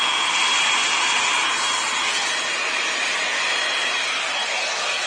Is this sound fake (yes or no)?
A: no